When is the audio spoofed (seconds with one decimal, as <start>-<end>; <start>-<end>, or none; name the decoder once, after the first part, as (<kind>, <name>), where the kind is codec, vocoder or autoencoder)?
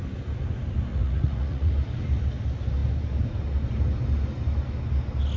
0.9-1.7 (vocoder, Vocos)